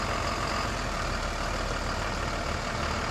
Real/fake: real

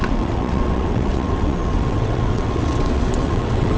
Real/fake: fake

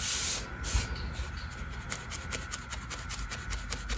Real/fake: real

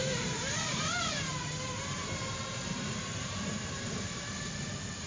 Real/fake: fake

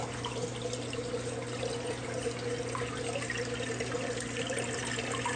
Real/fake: real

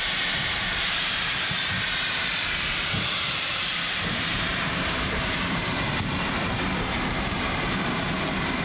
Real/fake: fake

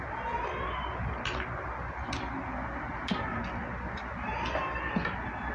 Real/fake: real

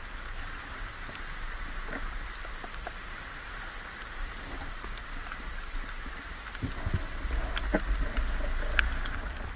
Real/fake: real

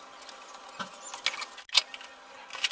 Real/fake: real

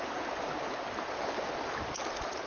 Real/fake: real